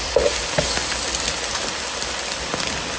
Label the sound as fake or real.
real